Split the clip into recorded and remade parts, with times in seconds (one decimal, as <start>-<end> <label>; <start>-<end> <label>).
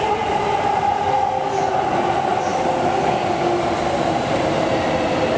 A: 0.0-5.4 recorded